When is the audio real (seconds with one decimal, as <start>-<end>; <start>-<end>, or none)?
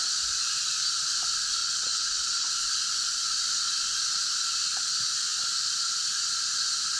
0.0-1.6; 2.5-7.0